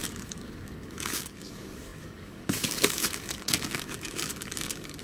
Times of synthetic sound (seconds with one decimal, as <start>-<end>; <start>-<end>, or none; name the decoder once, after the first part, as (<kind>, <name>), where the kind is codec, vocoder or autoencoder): 0.0-5.0 (codec, DAC)